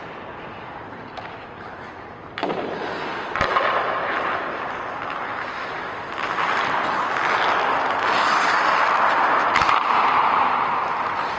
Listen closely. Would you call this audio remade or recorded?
recorded